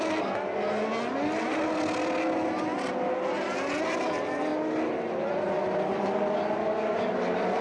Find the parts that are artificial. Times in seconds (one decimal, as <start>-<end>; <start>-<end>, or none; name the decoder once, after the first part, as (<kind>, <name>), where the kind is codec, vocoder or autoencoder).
6.6-7.1 (codec, DAC)